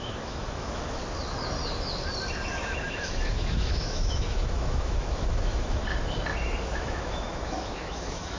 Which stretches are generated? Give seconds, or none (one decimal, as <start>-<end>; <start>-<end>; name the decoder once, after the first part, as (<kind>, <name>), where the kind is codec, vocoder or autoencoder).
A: 0.0-1.0 (autoencoder, DAC-VAE); 2.5-5.8; 6.6-8.4